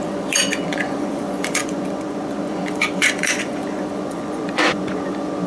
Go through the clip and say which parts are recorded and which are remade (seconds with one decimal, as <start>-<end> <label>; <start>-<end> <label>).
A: 0.0-5.5 remade